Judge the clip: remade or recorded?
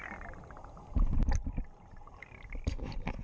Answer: recorded